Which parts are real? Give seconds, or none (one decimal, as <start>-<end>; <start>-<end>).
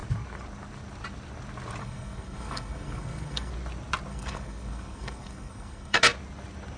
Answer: 0.0-1.8; 3.5-4.1; 6.0-6.8